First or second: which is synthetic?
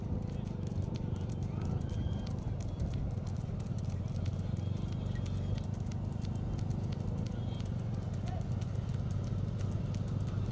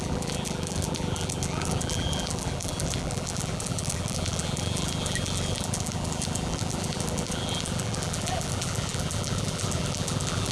second